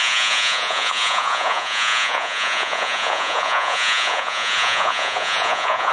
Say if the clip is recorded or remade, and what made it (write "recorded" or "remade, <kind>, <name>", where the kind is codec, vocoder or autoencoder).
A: remade, vocoder, Vocos